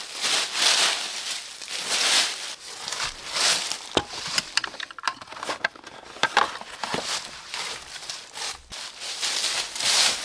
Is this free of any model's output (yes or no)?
yes